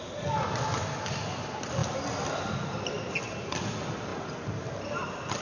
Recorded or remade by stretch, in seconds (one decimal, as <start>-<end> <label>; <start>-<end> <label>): 0.0-5.4 recorded